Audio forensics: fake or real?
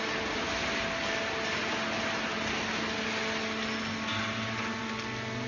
real